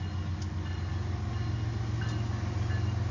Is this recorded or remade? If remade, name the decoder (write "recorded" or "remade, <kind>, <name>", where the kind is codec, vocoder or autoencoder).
recorded